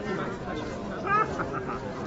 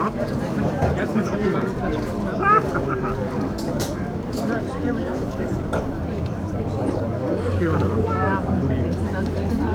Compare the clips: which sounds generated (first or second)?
second